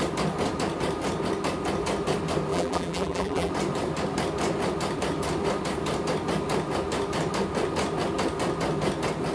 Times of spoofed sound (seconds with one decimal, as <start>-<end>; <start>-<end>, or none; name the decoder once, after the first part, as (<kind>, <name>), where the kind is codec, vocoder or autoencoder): 2.5-3.5 (vocoder, BigVGAN v2)